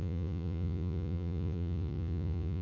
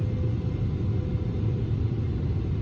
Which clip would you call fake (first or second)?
first